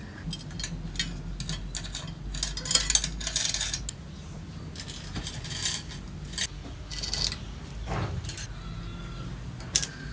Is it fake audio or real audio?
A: real